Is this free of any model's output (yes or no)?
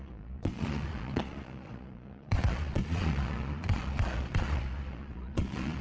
no